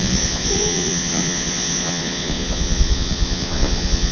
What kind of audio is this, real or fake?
fake